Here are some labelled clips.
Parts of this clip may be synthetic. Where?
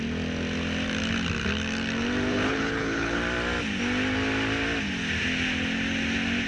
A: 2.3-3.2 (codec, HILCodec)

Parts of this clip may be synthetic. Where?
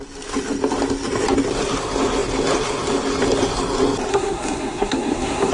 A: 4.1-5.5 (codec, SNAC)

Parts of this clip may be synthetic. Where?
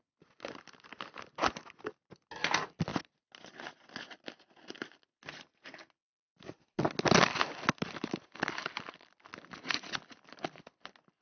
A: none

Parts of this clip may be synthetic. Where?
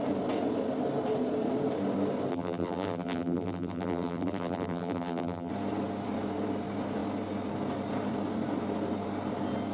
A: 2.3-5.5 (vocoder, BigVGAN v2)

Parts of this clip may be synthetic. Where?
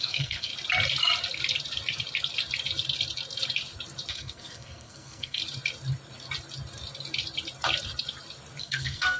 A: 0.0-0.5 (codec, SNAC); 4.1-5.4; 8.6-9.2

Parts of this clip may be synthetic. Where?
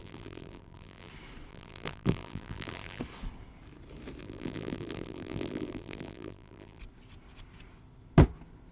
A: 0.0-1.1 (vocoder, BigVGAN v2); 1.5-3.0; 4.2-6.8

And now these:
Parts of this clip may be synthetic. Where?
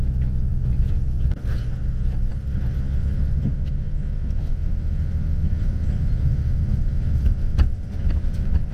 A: 0.5-1.3 (vocoder, Vocos)